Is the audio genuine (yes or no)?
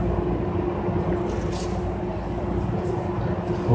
yes